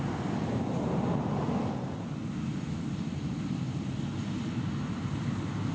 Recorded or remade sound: recorded